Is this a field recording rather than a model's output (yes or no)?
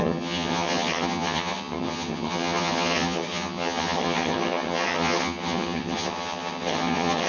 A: no